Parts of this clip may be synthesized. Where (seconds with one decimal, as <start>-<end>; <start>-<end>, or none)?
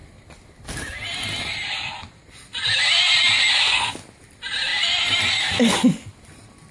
none